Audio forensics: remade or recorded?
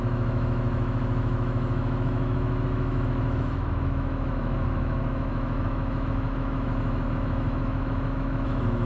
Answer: remade